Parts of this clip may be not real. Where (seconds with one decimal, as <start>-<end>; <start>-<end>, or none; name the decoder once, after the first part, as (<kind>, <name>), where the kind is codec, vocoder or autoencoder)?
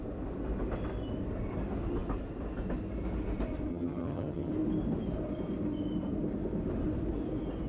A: 3.7-4.5 (vocoder, HiFi-GAN)